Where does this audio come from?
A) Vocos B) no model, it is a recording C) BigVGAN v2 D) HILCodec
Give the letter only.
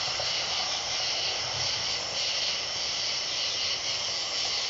B